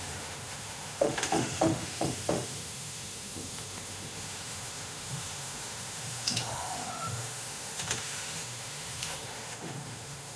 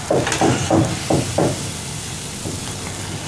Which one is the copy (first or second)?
first